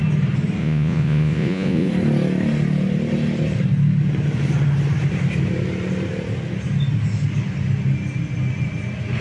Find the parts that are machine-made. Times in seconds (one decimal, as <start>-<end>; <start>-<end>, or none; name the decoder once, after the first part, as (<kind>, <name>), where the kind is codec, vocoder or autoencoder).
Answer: 0.6-1.9 (vocoder, Vocos)